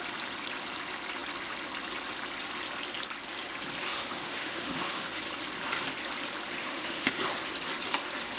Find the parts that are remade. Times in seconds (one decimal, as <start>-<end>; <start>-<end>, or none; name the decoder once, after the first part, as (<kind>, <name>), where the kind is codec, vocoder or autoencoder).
3.9-5.2 (autoencoder, DAC-VAE); 6.6-7.2